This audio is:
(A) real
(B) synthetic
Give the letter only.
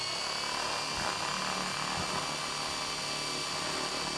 A